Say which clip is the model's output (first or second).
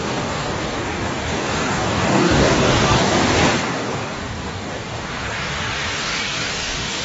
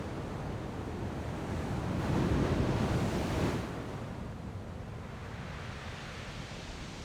first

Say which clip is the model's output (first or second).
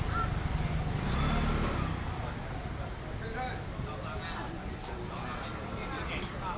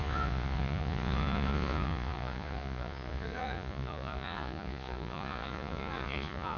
second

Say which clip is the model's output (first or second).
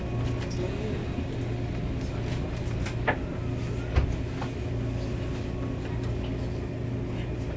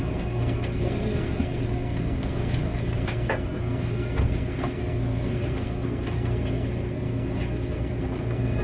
second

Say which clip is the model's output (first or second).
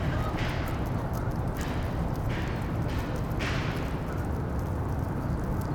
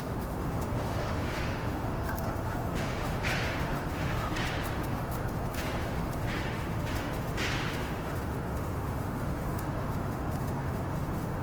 second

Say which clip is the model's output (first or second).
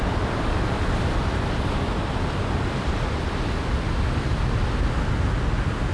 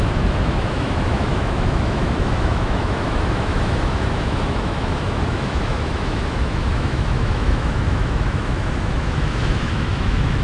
second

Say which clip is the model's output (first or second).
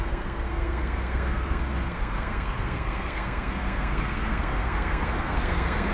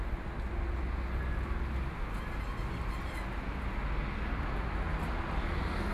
first